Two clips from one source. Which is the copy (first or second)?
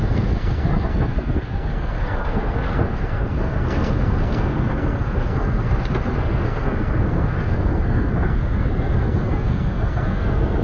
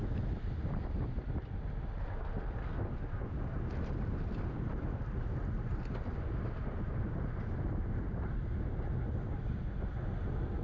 first